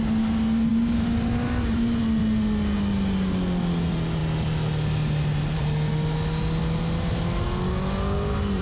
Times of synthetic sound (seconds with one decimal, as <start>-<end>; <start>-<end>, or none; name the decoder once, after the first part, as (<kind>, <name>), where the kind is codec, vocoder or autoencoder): 0.7-2.0 (vocoder, BigVGAN v2)